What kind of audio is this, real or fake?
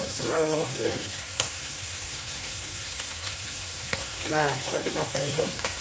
fake